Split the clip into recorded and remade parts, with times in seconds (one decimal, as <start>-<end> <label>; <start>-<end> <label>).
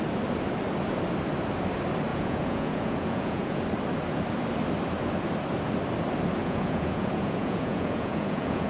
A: 0.0-2.1 recorded; 2.1-3.6 remade; 3.6-6.4 recorded; 6.4-8.7 remade